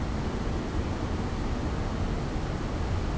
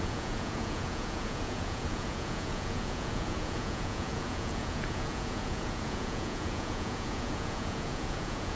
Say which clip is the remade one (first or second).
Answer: second